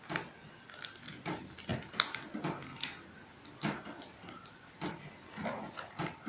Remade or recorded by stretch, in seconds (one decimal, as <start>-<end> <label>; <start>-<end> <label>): 0.0-6.3 recorded